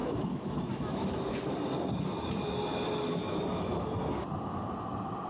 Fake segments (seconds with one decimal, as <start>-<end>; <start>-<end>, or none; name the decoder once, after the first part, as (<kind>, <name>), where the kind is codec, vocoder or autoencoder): 0.0-1.1 (autoencoder, DAC-VAE); 3.2-3.8